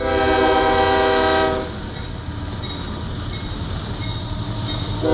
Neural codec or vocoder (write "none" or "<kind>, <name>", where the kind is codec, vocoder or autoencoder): none